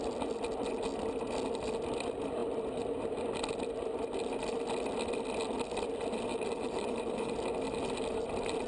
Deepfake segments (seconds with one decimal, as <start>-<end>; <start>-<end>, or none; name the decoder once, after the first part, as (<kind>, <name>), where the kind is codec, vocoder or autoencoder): 6.3-7.3 (vocoder, BigVGAN v2)